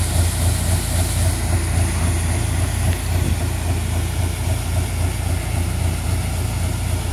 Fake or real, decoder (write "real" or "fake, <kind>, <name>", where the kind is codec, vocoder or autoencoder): real